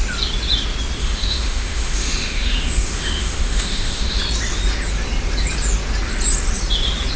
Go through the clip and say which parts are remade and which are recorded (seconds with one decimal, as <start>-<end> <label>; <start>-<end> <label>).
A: 0.0-1.0 recorded; 1.0-4.2 remade; 4.2-7.2 recorded